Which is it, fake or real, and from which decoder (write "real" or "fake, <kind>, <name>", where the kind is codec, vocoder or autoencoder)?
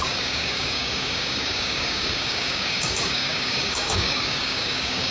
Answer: fake, codec, DAC